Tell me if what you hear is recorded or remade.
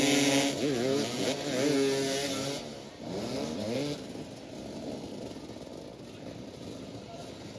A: recorded